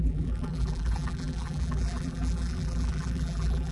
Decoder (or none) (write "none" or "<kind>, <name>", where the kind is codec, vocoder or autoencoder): vocoder, BigVGAN v2